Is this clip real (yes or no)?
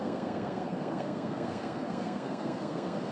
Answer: no